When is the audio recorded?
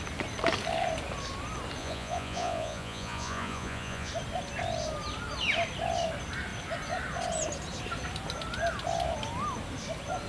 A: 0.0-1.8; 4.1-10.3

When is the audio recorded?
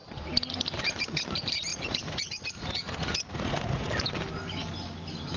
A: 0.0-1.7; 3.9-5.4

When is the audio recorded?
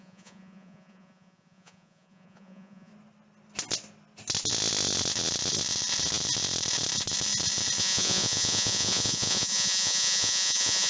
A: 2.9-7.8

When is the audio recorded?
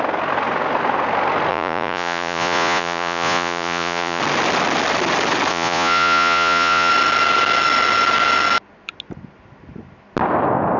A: 0.0-1.5; 4.2-5.5; 6.9-10.8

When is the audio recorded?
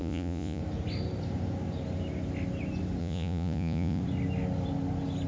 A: 0.6-3.0; 4.0-5.3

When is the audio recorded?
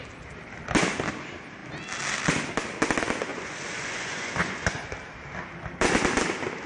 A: 0.0-3.3; 4.9-6.7